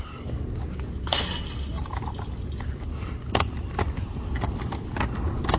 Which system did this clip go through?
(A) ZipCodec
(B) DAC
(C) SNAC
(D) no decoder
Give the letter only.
D